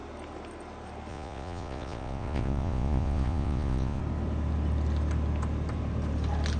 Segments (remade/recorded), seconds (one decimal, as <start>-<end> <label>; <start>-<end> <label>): 0.0-1.1 recorded; 1.1-4.0 remade; 4.0-6.6 recorded